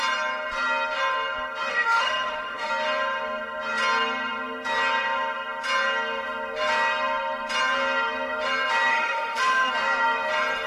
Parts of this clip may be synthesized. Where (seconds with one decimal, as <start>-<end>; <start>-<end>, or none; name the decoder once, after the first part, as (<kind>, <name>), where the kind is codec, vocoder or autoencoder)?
1.7-2.7 (autoencoder, DAC-VAE); 8.9-9.7